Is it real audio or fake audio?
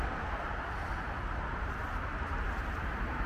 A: real